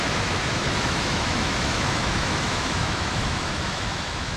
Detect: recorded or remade remade